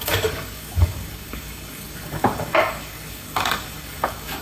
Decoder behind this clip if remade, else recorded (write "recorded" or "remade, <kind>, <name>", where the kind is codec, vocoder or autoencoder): remade, codec, DAC